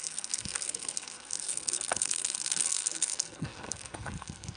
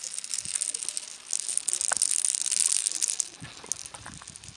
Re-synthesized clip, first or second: first